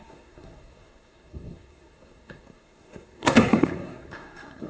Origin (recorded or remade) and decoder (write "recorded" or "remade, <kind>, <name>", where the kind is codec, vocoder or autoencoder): remade, codec, SNAC